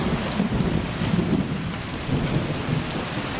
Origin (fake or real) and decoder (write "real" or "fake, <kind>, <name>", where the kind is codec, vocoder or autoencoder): real